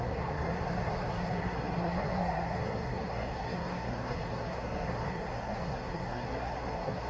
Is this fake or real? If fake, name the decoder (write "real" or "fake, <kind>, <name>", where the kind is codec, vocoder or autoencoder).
fake, codec, SNAC